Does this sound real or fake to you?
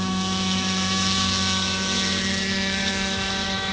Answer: fake